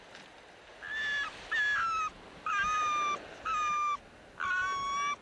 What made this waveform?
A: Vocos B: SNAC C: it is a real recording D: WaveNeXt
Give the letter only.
C